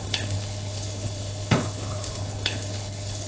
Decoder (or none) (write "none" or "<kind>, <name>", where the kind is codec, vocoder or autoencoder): codec, HILCodec